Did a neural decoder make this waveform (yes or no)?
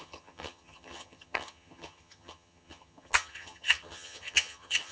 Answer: yes